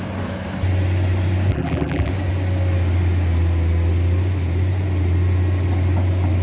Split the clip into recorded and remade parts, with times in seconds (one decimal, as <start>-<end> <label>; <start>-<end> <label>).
0.0-1.5 recorded; 1.5-2.1 remade; 2.1-6.4 recorded